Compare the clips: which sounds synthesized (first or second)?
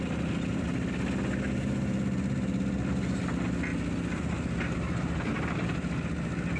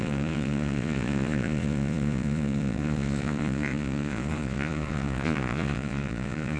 second